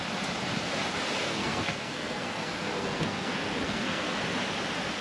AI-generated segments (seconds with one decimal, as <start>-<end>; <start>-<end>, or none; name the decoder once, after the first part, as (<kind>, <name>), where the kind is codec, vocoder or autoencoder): 1.2-4.2 (codec, SNAC)